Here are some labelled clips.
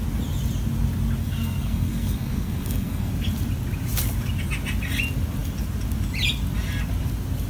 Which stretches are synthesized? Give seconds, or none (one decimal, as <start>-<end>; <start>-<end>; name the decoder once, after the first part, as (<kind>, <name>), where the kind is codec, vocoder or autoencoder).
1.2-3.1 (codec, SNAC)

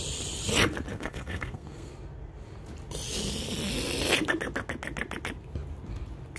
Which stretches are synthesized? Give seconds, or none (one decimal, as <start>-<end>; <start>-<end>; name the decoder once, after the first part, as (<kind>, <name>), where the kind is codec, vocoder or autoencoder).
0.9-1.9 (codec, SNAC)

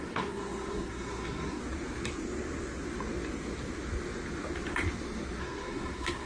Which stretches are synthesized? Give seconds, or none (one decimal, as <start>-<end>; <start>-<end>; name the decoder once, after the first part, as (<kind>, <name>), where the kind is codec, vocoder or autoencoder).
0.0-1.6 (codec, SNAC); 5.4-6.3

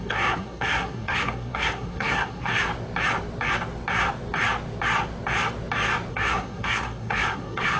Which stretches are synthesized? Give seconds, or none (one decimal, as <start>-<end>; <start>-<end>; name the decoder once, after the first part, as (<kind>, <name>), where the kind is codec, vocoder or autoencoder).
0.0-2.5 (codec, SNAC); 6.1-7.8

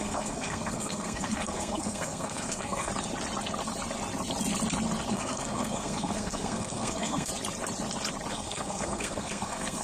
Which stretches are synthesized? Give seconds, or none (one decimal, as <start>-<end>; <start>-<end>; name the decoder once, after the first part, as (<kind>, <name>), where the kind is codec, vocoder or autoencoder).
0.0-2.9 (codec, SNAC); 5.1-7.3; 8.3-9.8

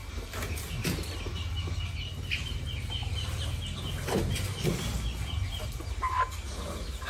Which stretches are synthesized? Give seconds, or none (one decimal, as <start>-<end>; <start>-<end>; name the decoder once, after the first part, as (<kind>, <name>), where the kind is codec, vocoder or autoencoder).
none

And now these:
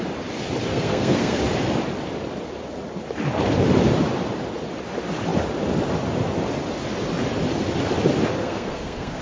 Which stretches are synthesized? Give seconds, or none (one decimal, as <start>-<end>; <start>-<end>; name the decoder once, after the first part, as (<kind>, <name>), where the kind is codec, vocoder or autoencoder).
0.7-1.4 (codec, SNAC); 8.4-9.2

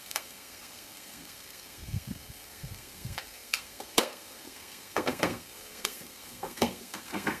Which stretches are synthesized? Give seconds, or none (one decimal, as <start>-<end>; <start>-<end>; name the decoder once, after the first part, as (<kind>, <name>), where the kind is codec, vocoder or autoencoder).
0.0-7.4 (codec, SNAC)